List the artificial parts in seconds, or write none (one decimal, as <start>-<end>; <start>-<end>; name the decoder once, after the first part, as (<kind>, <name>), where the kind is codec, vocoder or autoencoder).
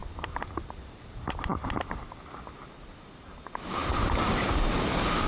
3.2-3.8 (vocoder, BigVGAN v2); 4.7-5.3